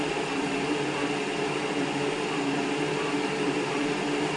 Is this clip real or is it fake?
real